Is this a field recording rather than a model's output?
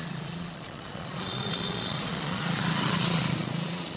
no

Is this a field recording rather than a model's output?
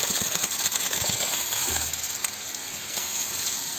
no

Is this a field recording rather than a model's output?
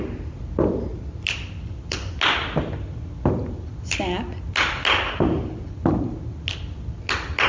yes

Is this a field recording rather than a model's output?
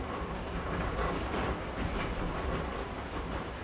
yes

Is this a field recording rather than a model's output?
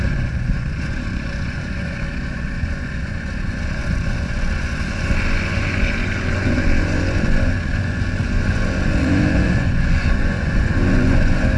no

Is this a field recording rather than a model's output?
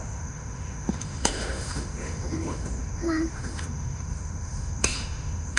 no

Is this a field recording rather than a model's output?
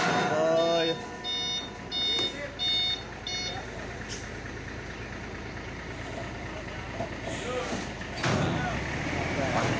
yes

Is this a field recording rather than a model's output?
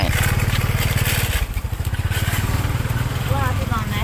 yes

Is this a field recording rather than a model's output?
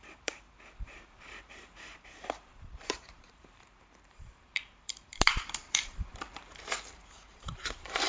no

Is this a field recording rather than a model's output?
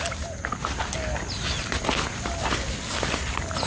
yes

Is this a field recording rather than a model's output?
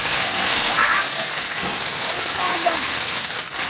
no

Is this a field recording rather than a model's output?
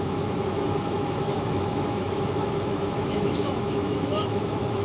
no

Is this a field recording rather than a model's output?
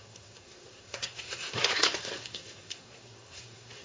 no